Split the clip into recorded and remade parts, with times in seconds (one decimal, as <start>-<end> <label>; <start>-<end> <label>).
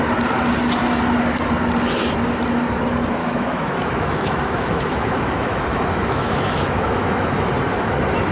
0.0-3.2 recorded; 3.2-7.5 remade; 7.5-8.3 recorded